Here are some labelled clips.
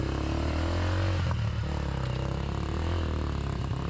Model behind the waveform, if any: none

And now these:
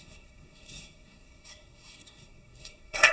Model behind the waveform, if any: codec, SNAC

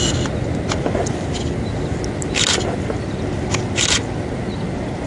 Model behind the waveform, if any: none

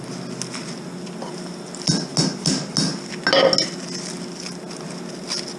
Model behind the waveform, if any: none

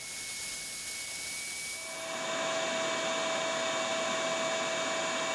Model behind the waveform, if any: none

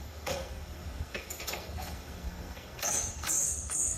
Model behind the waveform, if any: codec, SNAC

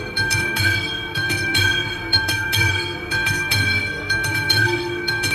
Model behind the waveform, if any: codec, SNAC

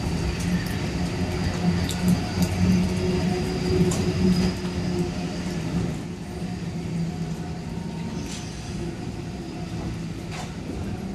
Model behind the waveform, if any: none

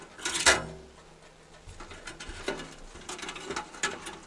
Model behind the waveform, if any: none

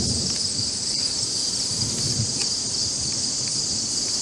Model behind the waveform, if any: none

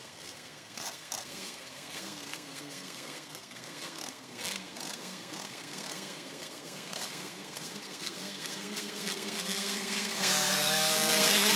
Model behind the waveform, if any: codec, SNAC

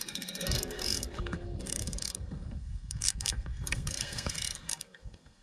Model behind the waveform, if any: codec, SNAC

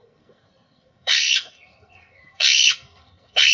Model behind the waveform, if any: codec, SNAC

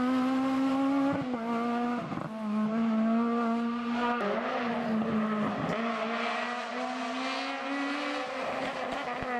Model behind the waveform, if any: none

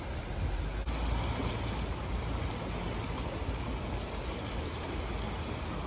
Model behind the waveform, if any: none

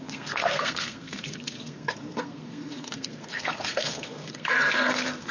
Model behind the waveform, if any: codec, SNAC